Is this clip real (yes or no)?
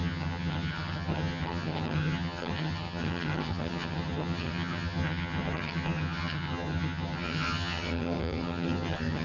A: no